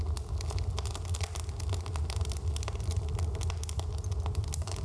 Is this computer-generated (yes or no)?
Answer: no